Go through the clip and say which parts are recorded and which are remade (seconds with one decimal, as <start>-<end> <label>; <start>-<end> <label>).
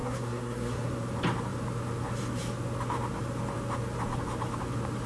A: 0.0-0.9 remade; 0.9-5.1 recorded